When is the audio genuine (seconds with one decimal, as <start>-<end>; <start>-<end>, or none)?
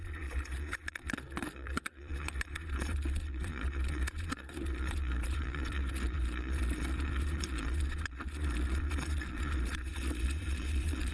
none